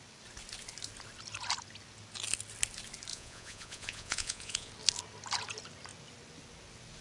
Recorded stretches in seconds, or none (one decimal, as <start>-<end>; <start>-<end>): 0.0-3.1; 4.7-7.0